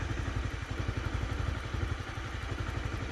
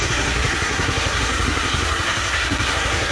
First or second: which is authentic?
first